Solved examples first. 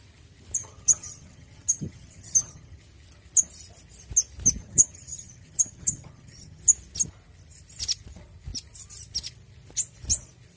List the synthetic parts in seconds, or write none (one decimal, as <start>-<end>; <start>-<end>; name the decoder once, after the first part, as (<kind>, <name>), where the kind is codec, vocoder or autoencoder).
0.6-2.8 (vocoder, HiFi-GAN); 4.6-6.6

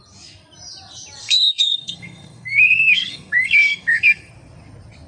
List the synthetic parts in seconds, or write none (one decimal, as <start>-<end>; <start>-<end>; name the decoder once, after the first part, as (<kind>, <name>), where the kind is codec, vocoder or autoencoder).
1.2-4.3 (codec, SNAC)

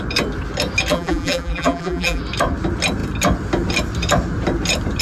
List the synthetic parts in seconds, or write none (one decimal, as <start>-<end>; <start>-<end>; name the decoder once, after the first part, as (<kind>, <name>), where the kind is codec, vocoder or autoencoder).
0.9-2.2 (vocoder, BigVGAN v2)

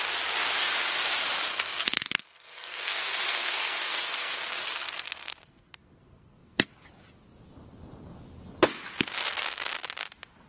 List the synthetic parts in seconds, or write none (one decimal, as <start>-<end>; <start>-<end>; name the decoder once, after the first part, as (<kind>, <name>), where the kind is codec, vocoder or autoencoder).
1.5-6.7 (codec, SNAC)

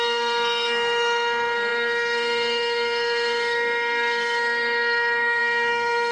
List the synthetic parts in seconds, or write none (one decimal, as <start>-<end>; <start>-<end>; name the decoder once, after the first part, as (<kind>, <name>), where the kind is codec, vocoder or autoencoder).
0.0-6.1 (codec, SNAC)